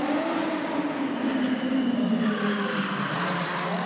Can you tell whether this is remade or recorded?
recorded